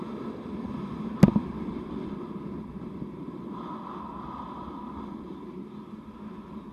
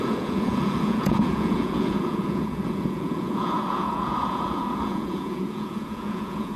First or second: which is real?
first